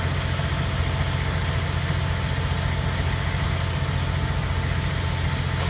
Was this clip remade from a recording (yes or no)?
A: no